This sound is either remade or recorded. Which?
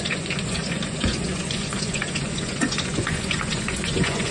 remade